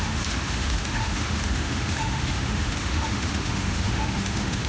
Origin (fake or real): fake